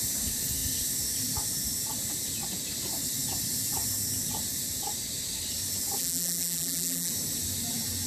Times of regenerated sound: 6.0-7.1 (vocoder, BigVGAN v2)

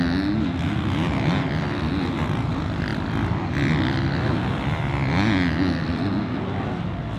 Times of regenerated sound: none

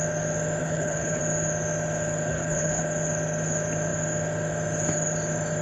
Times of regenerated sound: 0.6-1.2 (codec, HILCodec); 2.3-2.8

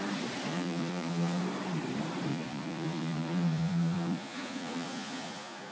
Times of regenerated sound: 0.5-1.4 (vocoder, Vocos); 2.3-5.7

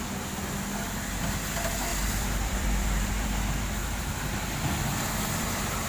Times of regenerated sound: 1.9-3.1 (vocoder, BigVGAN v2)

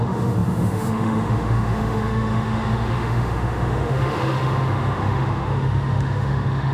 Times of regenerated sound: 0.0-6.7 (autoencoder, DAC-VAE)

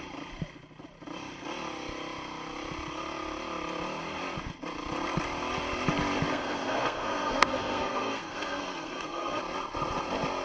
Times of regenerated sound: 6.3-9.4 (codec, SNAC)

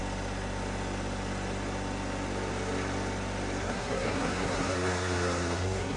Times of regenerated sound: 3.6-6.0 (codec, SNAC)